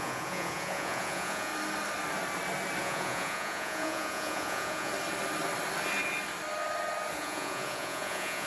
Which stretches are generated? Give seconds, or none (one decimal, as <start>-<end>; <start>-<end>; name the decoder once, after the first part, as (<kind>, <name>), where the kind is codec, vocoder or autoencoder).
0.0-1.5 (vocoder, Vocos); 2.8-4.9; 7.1-8.5